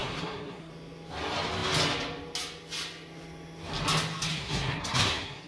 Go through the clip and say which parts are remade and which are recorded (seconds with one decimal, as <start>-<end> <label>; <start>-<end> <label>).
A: 0.0-0.7 remade; 0.7-4.3 recorded; 4.3-5.5 remade